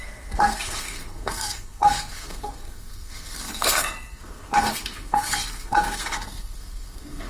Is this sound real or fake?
fake